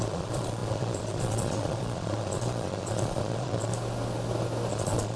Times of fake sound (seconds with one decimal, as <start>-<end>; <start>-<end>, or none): 0.0-3.7; 4.7-5.2